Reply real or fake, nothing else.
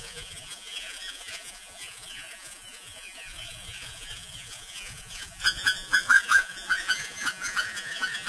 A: fake